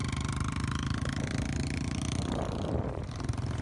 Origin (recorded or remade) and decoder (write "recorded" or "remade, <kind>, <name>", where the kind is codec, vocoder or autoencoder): recorded